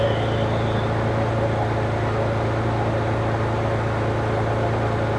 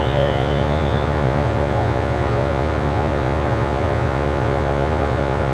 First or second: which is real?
first